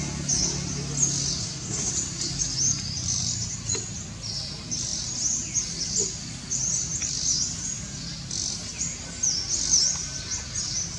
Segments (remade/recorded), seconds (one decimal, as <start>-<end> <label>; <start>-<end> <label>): 0.0-1.4 recorded; 1.4-1.9 remade; 1.9-11.0 recorded